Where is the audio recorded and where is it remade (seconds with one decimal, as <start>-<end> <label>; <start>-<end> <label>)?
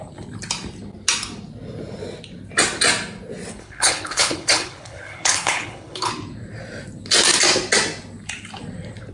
0.0-3.6 recorded; 3.6-6.1 remade; 6.1-9.1 recorded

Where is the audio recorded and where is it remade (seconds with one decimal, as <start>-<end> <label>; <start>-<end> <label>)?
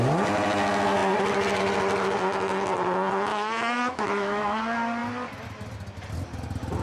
0.0-3.3 recorded; 3.3-4.6 remade; 4.6-6.8 recorded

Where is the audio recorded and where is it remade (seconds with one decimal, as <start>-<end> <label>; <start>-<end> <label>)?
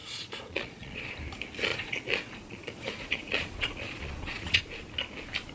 0.0-1.1 remade; 1.1-1.7 recorded; 1.7-4.6 remade; 4.6-5.5 recorded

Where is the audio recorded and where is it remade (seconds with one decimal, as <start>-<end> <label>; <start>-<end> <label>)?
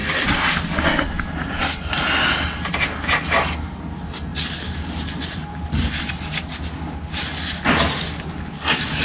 0.0-0.6 remade; 0.6-4.3 recorded; 4.3-6.1 remade; 6.1-9.0 recorded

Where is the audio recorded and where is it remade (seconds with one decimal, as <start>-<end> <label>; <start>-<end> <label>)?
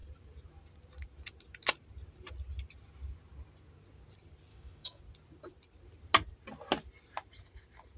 0.0-4.5 recorded; 4.5-5.0 remade; 5.0-8.0 recorded